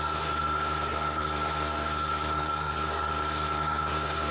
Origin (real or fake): fake